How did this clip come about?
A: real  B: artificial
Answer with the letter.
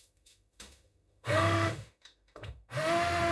B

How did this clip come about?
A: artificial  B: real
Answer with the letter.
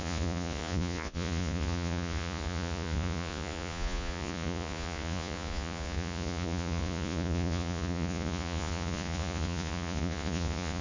A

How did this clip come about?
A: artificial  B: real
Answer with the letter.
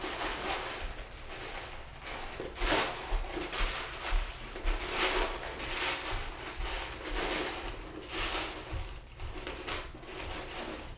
B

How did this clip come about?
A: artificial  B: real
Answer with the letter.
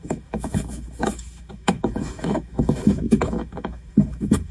A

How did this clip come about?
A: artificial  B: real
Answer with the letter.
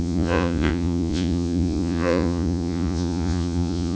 A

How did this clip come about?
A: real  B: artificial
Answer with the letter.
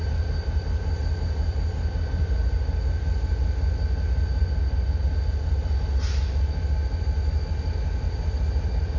A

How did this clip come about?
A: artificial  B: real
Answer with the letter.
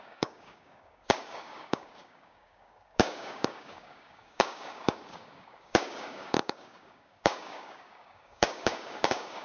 A